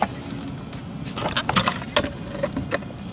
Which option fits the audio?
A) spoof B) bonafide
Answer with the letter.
B